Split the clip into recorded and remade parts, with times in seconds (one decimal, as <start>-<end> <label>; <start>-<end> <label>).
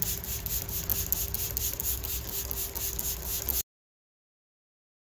0.0-5.1 recorded